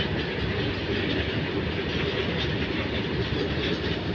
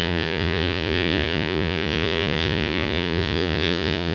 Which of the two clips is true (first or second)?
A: first